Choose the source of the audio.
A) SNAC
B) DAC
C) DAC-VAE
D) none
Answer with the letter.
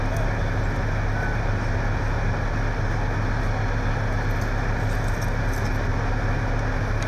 D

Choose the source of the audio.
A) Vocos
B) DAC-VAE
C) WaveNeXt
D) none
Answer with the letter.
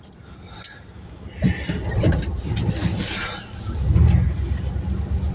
D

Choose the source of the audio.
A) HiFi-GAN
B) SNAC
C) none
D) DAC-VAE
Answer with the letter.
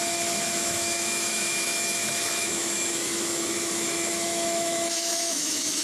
D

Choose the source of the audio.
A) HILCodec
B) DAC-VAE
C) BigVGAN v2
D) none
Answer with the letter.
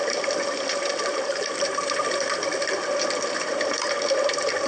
D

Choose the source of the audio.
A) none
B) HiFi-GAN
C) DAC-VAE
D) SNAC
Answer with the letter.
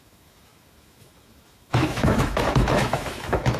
C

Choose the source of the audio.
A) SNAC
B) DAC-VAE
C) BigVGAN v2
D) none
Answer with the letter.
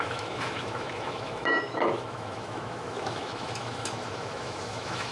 B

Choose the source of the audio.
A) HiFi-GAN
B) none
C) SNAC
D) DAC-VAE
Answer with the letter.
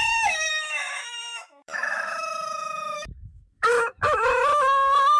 D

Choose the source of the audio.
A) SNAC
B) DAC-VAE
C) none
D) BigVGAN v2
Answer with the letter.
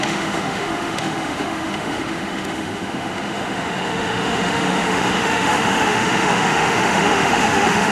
B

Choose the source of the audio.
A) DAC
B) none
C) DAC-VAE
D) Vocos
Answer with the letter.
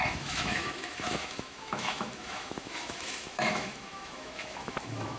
C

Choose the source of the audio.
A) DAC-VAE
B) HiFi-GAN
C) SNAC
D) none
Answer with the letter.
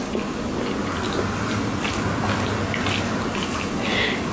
D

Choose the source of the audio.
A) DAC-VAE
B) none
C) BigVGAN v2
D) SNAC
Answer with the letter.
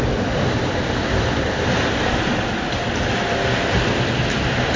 B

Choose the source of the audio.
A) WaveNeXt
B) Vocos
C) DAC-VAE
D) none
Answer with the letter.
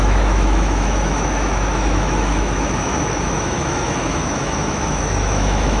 C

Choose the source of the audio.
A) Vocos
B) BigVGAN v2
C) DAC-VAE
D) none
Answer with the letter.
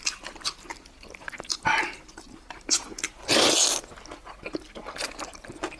D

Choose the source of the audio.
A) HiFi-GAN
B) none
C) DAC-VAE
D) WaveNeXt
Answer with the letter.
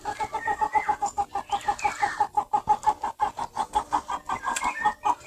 B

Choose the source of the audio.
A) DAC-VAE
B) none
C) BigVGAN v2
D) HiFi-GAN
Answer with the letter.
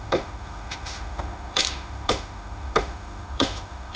A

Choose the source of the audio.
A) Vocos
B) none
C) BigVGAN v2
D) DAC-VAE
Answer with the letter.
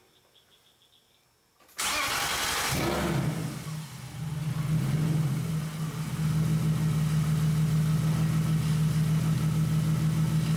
B